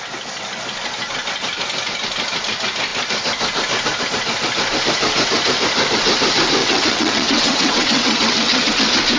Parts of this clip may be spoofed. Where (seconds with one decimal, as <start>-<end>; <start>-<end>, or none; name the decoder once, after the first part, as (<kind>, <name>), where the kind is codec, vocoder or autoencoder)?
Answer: 6.6-8.7 (vocoder, WaveNeXt)